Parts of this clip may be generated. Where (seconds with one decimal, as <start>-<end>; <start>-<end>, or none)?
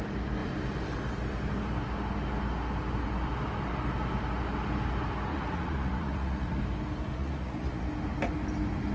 5.3-6.6; 7.2-7.9